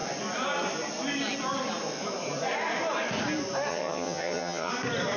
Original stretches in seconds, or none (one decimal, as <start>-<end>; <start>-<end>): 0.0-3.7; 4.7-5.2